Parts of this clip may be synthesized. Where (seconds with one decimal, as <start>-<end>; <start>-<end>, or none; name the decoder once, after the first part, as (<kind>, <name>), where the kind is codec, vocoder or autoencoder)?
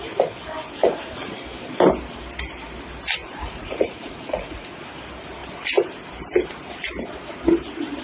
0.8-1.3 (vocoder, Vocos); 3.2-4.8